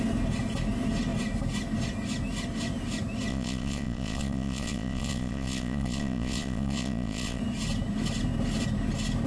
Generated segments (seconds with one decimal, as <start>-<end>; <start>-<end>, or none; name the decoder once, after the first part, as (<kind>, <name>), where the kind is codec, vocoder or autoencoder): 3.3-7.4 (vocoder, Vocos)

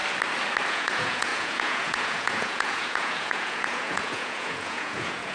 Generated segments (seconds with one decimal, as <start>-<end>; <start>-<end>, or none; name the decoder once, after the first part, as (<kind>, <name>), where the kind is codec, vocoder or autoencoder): 0.7-5.3 (vocoder, Vocos)

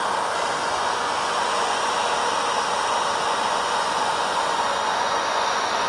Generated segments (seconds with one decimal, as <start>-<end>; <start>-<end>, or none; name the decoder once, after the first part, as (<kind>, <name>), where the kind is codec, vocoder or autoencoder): 0.6-1.9 (vocoder, Vocos); 3.2-5.9

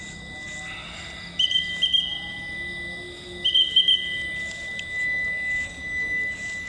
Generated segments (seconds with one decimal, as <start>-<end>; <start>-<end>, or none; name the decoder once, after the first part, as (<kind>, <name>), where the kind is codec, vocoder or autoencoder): none

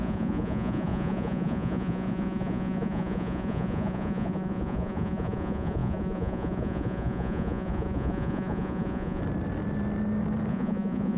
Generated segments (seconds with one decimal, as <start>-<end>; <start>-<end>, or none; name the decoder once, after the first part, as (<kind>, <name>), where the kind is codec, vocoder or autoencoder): 0.0-9.2 (vocoder, Vocos); 10.5-11.2